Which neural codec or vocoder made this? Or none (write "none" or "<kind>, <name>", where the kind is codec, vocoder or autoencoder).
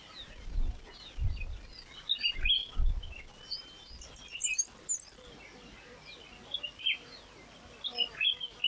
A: none